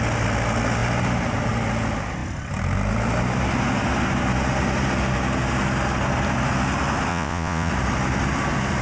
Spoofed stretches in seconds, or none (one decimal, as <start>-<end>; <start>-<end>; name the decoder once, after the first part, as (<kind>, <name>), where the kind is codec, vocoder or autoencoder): 7.1-7.7 (vocoder, Vocos)